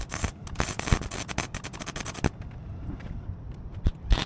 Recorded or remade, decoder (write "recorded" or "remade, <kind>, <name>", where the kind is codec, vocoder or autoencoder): recorded